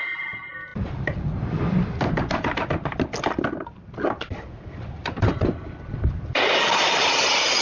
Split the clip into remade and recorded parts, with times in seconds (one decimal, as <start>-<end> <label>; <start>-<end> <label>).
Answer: 0.0-7.6 recorded